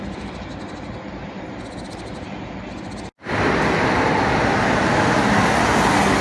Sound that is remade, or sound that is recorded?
recorded